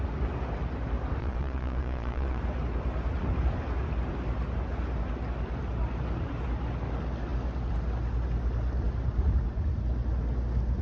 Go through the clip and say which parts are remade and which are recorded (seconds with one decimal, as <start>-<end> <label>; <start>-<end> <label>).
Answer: 0.0-1.2 recorded; 1.2-2.4 remade; 2.4-10.8 recorded